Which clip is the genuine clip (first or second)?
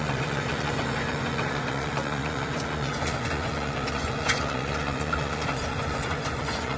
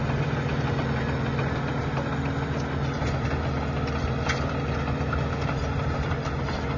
second